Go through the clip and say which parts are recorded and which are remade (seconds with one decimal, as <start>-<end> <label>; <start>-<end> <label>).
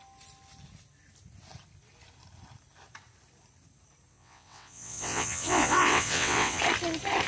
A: 0.0-4.1 recorded; 4.1-6.6 remade; 6.6-7.3 recorded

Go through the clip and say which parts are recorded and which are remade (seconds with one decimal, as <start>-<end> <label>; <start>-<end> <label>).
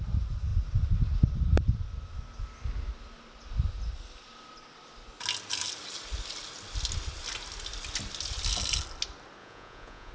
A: 0.0-9.4 recorded; 9.4-10.1 remade